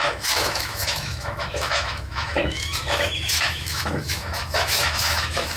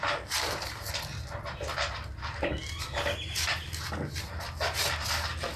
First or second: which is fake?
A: first